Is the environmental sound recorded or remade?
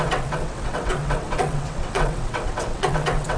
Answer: remade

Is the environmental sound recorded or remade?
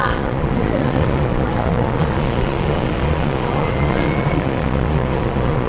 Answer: remade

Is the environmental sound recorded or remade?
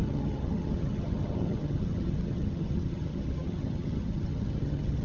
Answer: remade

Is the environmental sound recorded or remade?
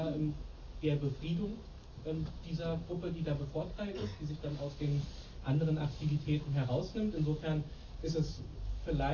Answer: recorded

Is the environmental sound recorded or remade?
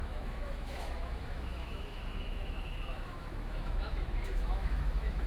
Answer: remade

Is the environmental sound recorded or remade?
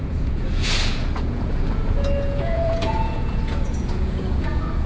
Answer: remade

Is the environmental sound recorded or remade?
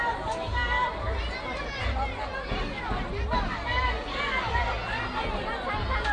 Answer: recorded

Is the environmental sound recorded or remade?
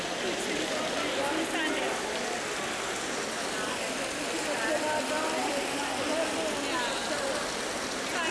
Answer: recorded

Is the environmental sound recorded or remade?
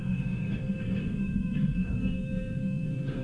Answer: remade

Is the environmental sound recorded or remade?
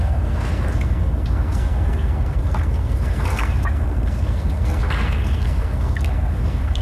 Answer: remade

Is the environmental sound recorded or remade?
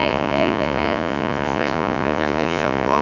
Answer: remade